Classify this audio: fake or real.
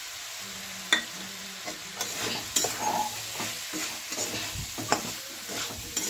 real